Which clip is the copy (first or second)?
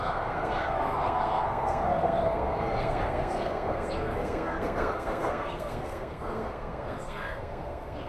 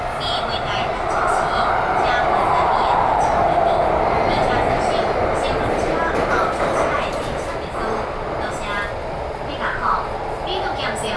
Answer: first